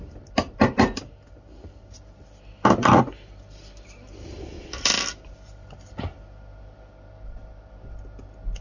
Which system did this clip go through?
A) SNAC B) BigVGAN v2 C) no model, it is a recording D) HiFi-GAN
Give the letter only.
C